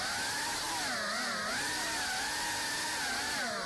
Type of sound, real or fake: real